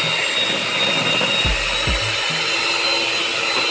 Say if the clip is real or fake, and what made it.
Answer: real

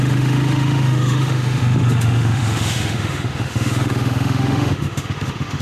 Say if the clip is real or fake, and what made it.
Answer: fake, autoencoder, DAC-VAE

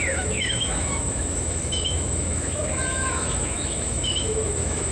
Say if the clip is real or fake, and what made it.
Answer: fake, autoencoder, DAC-VAE